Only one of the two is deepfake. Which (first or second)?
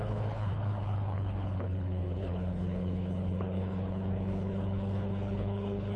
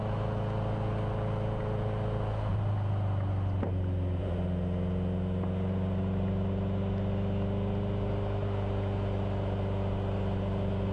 first